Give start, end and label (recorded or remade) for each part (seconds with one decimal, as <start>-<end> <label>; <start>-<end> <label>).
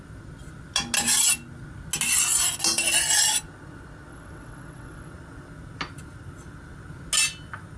0.0-4.1 recorded; 4.1-5.1 remade; 5.1-7.8 recorded